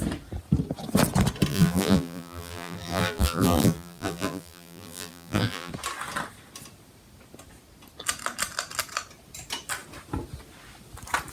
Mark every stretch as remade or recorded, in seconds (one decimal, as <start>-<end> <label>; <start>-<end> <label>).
0.0-1.5 recorded; 1.5-5.7 remade; 5.7-11.3 recorded